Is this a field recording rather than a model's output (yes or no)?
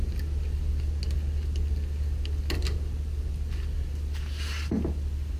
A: yes